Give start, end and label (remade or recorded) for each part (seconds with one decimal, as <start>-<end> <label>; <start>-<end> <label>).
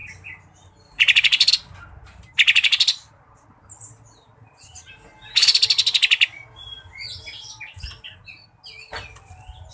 0.0-9.7 recorded